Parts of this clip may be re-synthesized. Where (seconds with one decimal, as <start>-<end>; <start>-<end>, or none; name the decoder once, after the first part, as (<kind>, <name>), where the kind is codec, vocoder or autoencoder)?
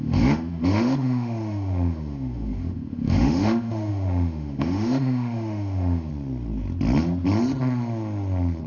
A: 0.0-6.1 (autoencoder, DAC-VAE)